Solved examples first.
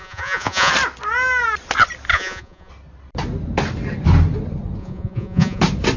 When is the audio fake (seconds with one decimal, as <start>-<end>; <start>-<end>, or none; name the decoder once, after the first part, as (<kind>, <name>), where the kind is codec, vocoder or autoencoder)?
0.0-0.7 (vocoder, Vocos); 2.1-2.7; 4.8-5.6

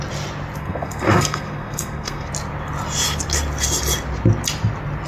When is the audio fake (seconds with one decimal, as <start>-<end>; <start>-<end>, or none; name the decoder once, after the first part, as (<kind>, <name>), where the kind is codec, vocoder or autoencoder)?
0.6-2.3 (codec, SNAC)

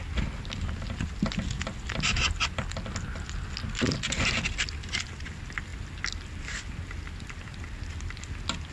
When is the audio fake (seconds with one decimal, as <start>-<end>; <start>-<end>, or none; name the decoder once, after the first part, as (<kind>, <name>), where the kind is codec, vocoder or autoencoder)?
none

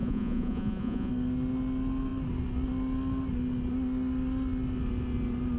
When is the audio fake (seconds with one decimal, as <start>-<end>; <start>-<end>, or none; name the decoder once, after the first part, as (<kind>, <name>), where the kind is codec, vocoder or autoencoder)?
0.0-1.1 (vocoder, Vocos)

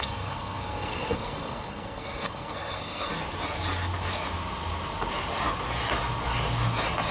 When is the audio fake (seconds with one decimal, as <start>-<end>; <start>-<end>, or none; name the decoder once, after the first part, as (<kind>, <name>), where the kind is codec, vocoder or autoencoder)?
0.0-3.1 (codec, SNAC)